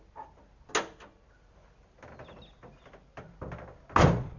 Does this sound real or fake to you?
real